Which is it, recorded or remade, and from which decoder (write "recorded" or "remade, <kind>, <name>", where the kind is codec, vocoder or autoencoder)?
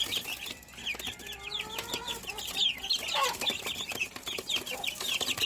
recorded